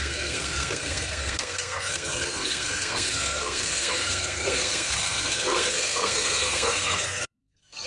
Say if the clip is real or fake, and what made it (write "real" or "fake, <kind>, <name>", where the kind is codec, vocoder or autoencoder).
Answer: fake, codec, SNAC